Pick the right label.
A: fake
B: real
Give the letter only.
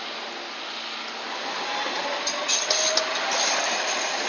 B